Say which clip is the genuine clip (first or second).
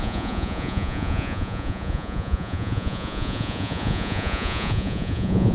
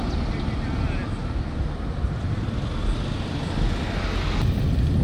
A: second